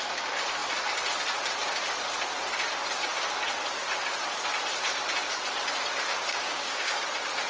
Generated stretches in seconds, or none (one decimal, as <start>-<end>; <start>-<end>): 6.3-7.0